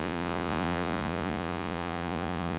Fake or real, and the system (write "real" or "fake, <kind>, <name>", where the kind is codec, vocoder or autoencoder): fake, vocoder, Vocos